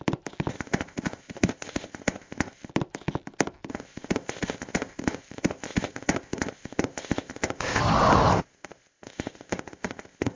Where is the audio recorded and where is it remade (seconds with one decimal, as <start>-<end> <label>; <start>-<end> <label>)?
0.0-0.5 recorded; 0.5-2.7 remade; 2.7-3.7 recorded; 3.7-7.8 remade; 7.8-8.3 recorded; 8.3-10.4 remade